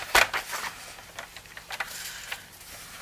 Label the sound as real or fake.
real